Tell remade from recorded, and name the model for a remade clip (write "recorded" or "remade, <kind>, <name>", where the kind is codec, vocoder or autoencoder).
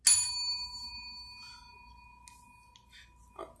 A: recorded